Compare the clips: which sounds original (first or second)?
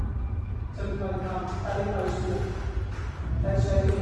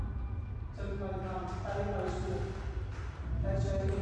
second